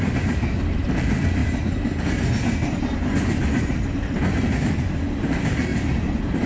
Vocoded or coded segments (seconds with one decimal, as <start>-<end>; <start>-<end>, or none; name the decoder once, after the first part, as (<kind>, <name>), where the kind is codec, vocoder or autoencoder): 0.0-1.4 (vocoder, BigVGAN v2); 5.2-5.7